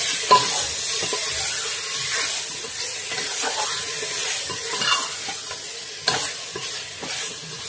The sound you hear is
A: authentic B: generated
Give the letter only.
A